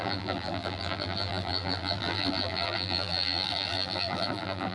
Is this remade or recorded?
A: remade